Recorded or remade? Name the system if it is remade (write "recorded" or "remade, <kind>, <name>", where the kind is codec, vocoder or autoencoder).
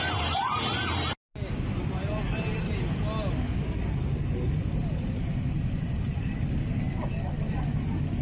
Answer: recorded